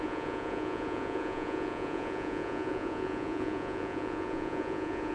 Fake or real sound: fake